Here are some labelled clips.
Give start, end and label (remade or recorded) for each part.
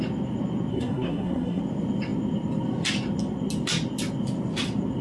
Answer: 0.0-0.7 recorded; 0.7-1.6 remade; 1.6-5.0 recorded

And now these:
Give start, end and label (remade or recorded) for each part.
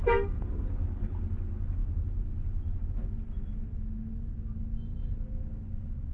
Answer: 0.0-0.6 remade; 0.6-6.1 recorded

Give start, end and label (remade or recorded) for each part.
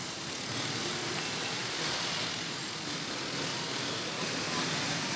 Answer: 0.0-3.1 remade; 3.1-3.5 recorded; 3.5-5.2 remade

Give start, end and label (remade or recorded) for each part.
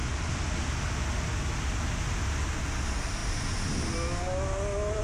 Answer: 0.0-5.0 recorded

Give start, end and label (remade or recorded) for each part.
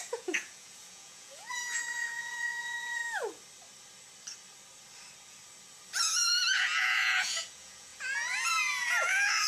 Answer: 0.0-3.0 remade; 3.0-5.9 recorded; 5.9-9.5 remade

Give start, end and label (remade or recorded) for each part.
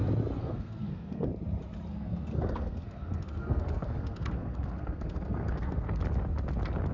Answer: 0.0-0.4 recorded; 0.4-1.3 remade; 1.3-1.9 recorded; 1.9-6.0 remade; 6.0-6.9 recorded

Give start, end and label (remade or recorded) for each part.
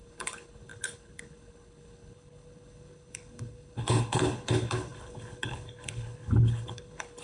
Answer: 0.0-7.2 remade